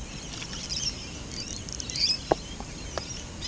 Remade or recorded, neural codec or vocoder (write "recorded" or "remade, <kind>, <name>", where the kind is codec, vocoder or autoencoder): remade, vocoder, BigVGAN v2